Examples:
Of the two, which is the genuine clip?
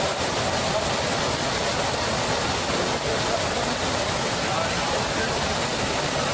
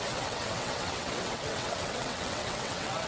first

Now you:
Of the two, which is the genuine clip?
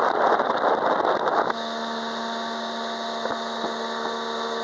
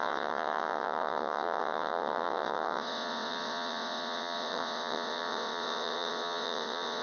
first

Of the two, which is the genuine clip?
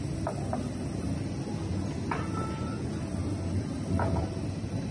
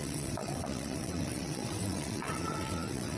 first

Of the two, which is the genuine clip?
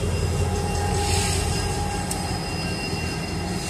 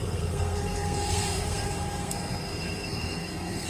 first